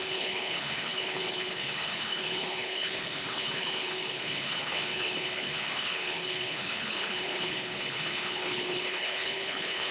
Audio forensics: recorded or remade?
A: remade